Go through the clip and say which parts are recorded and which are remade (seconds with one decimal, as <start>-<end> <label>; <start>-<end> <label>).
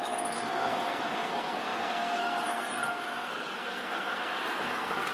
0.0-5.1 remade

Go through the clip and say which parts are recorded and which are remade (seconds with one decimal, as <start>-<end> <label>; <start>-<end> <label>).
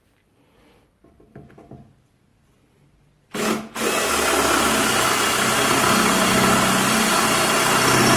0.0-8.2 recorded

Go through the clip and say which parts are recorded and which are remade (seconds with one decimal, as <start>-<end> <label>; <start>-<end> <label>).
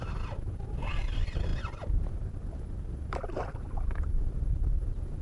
0.0-5.2 remade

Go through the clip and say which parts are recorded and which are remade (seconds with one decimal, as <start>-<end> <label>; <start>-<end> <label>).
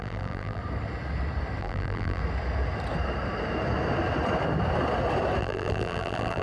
0.0-0.6 remade; 0.6-1.6 recorded; 1.6-2.2 remade; 2.2-5.4 recorded; 5.4-6.4 remade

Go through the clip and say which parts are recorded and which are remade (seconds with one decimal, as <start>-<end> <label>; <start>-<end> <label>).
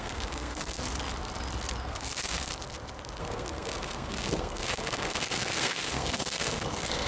0.0-0.8 remade; 0.8-1.8 recorded; 1.8-2.5 remade; 2.5-3.2 recorded; 3.2-7.1 remade